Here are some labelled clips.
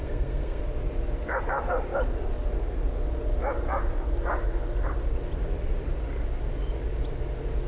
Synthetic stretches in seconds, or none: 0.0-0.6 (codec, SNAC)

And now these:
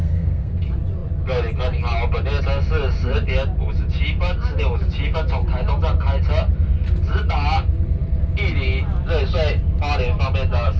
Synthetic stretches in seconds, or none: 0.0-0.5 (codec, SNAC)

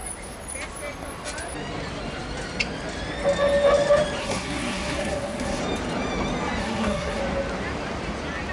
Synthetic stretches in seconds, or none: 4.2-5.6 (codec, SNAC); 6.6-7.2

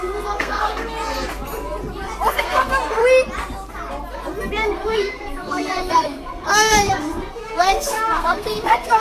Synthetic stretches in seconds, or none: 0.0-1.1 (codec, SNAC); 2.3-3.0; 4.5-9.0

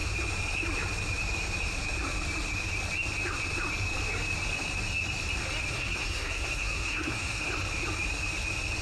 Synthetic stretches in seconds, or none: 5.7-7.5 (codec, SNAC)